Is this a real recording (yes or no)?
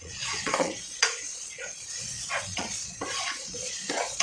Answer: no